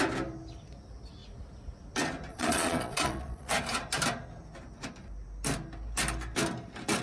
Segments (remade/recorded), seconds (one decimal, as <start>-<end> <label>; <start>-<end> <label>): 0.0-2.3 recorded; 2.3-3.5 remade; 3.5-7.0 recorded